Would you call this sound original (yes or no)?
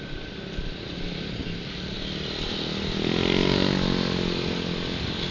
yes